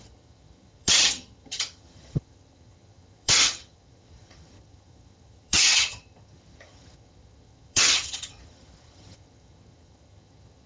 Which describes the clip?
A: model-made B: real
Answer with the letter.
A